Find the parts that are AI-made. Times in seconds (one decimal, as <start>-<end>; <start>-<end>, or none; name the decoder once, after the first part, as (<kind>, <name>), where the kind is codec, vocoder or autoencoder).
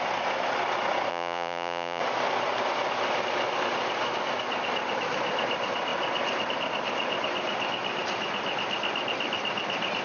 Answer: 1.1-2.0 (vocoder, Vocos)